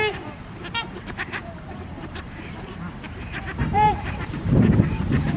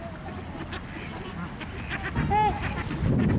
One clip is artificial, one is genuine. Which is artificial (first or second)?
first